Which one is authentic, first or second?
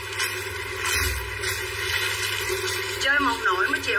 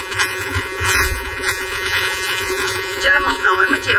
first